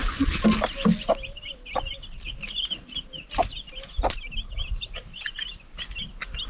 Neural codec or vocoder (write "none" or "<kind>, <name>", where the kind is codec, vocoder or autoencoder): none